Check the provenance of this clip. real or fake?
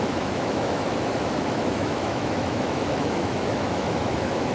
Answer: fake